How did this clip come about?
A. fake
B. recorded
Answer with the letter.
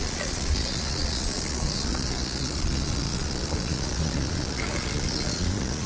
A